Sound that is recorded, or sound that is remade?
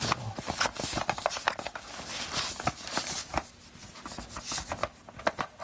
recorded